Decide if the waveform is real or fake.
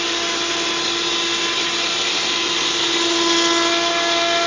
real